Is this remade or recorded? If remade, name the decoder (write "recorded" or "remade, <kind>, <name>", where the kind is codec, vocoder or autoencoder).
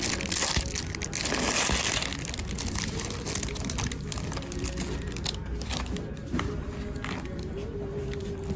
recorded